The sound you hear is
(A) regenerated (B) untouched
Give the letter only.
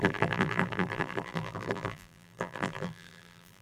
A